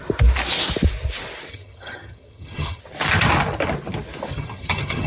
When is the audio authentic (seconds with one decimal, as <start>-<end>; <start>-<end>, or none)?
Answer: 0.0-1.5; 2.8-4.3

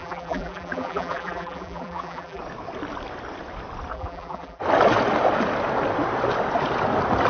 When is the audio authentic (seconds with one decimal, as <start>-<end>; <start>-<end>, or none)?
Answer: 2.4-3.9; 4.6-7.3

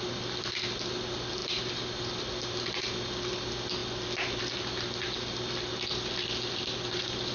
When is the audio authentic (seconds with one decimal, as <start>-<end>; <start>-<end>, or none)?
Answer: 0.0-7.3

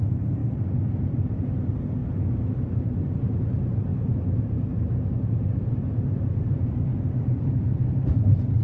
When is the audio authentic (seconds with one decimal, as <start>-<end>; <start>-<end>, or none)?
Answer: 0.4-1.3; 2.0-3.1

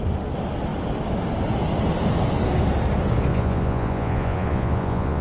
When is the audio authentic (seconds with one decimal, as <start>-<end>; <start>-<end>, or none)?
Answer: 0.0-3.3